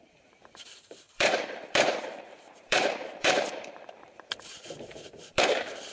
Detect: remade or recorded remade